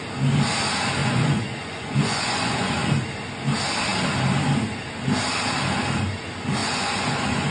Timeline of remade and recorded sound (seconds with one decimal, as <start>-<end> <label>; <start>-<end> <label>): 0.0-1.0 recorded; 1.0-2.9 remade; 2.9-6.6 recorded; 6.6-7.5 remade